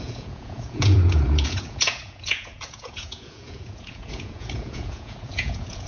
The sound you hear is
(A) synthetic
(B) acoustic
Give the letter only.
A